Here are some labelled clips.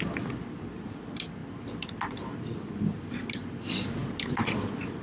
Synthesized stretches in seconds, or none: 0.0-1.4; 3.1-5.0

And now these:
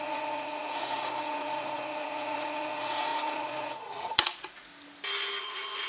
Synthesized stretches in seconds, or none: 0.0-4.7; 5.4-5.9

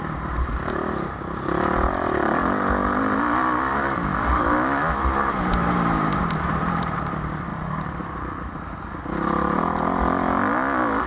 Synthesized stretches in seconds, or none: none

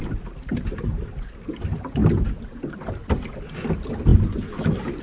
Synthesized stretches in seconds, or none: none

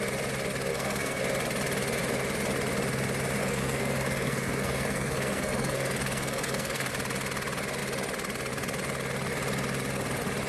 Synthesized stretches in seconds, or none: 0.7-1.2; 3.4-6.9